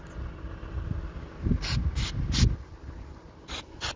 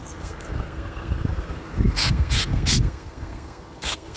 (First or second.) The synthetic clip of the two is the second